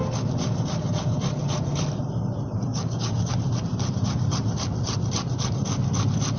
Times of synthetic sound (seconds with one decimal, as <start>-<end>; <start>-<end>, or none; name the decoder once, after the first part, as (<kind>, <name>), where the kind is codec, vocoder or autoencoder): 2.7-3.3 (codec, DAC)